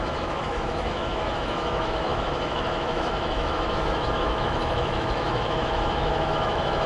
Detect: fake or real fake